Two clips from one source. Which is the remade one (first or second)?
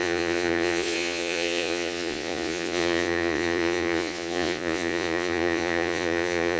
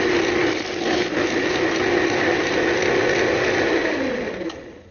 first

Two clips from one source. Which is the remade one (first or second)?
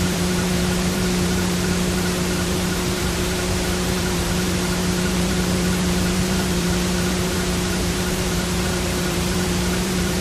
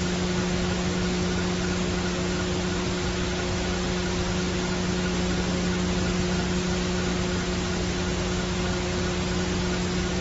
first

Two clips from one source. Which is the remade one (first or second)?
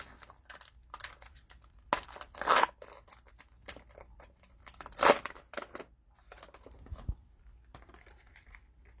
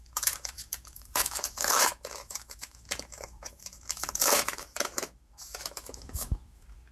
second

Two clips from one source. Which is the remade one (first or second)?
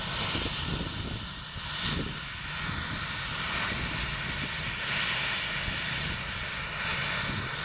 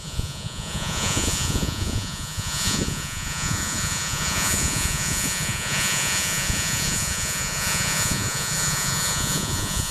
second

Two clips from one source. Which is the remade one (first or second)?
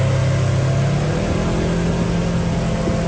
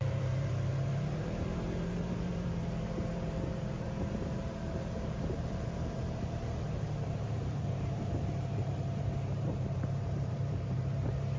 second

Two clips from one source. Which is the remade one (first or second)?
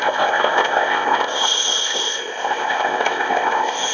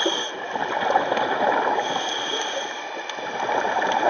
first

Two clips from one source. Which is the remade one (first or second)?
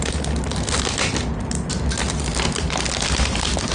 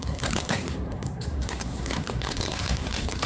second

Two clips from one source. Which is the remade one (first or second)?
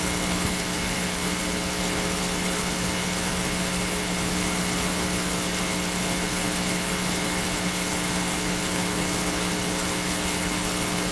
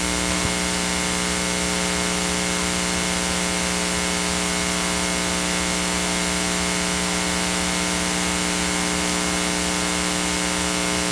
first